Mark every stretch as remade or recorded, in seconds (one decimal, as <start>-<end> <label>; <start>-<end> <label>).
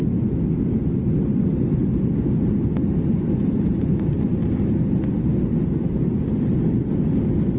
0.0-7.6 recorded